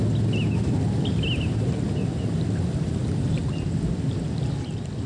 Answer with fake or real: real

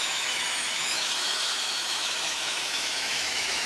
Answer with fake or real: fake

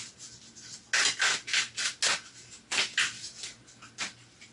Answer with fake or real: real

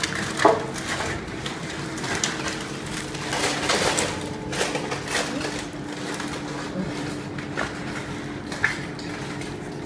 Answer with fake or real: real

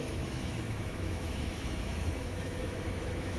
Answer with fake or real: fake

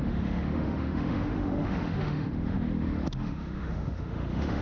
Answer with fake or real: fake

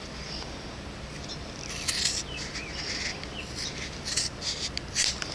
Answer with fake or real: real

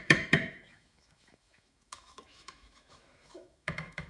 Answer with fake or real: fake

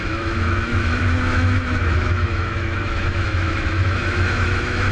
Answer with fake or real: fake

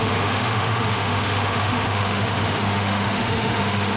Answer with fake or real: fake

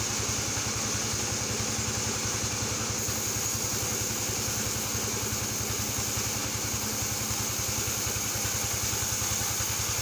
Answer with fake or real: real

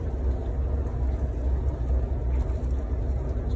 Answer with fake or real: real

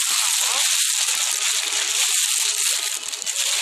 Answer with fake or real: real